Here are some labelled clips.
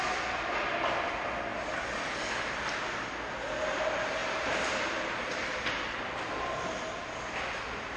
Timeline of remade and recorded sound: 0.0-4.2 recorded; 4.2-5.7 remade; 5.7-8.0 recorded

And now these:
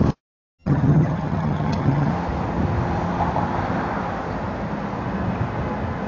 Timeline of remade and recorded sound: 0.0-0.6 recorded; 0.6-2.1 remade; 2.1-6.1 recorded

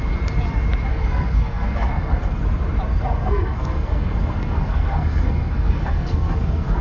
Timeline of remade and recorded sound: 0.0-0.9 recorded; 0.9-2.4 remade; 2.4-2.9 recorded; 2.9-6.8 remade

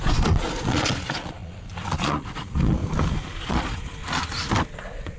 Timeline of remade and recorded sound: 0.0-2.8 remade; 2.8-3.4 recorded; 3.4-4.0 remade; 4.0-4.8 recorded; 4.8-5.2 remade

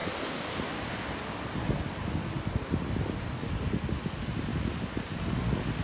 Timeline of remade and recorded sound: 0.0-5.8 recorded